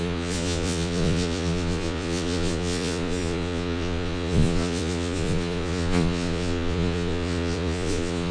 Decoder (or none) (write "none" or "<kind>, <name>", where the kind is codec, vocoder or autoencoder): vocoder, Vocos